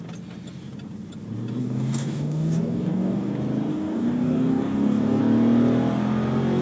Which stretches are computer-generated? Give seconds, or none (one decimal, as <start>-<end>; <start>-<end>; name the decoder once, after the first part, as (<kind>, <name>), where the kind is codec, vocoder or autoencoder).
1.6-3.3 (codec, DAC); 3.7-5.2